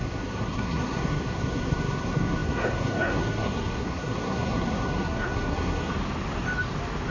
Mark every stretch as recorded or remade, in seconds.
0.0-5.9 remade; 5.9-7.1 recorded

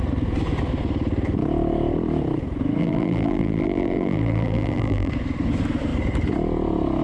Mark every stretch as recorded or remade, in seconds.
0.0-2.8 recorded; 2.8-5.1 remade; 5.1-7.0 recorded

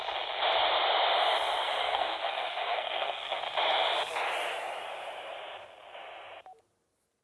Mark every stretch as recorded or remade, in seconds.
0.0-1.6 recorded; 1.6-3.4 remade; 3.4-7.2 recorded

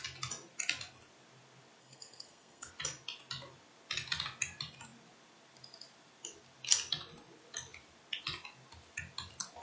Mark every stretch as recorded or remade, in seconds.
0.0-1.8 recorded; 1.8-2.7 remade; 2.7-9.6 recorded

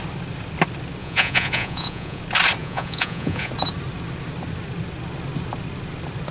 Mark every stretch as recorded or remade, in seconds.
0.0-1.0 recorded; 1.0-2.2 remade; 2.2-2.6 recorded; 2.6-3.5 remade; 3.5-6.3 recorded

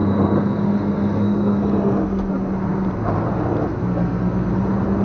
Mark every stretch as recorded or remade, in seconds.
0.0-2.3 remade; 2.3-3.8 recorded; 3.8-4.5 remade; 4.5-5.0 recorded

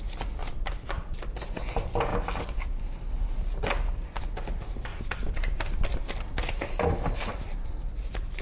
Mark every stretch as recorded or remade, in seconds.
0.0-0.4 recorded; 0.4-1.3 remade; 1.3-4.9 recorded; 4.9-7.8 remade; 7.8-8.4 recorded